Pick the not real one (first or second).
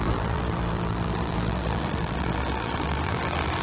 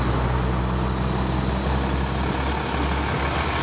first